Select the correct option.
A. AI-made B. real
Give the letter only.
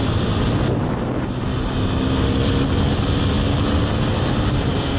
B